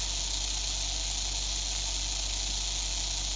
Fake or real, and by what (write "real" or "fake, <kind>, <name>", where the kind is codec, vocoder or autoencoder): real